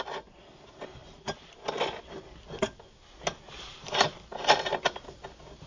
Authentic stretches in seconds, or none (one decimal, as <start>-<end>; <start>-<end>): 0.0-5.7